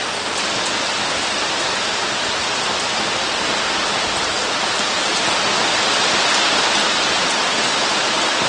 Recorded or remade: recorded